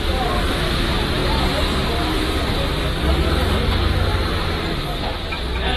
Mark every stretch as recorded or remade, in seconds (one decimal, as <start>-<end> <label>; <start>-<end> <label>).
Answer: 0.0-2.8 recorded; 2.8-3.3 remade; 3.3-5.8 recorded